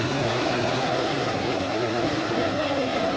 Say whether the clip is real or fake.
fake